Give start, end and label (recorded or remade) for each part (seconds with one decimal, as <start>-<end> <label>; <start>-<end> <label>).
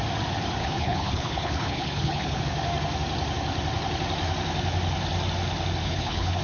0.0-0.6 recorded; 0.6-2.4 remade; 2.4-5.8 recorded; 5.8-6.4 remade